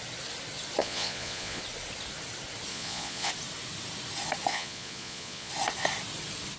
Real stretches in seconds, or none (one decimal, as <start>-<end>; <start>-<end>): 0.0-0.8; 1.6-2.7; 3.3-4.5; 5.5-6.6